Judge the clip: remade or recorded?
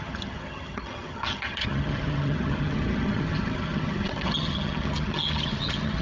remade